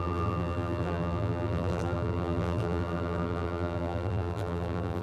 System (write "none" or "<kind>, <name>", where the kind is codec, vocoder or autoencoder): vocoder, BigVGAN v2